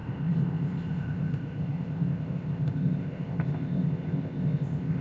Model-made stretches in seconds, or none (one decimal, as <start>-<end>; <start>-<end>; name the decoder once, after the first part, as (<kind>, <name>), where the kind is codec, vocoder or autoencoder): 0.0-5.0 (codec, ZipCodec)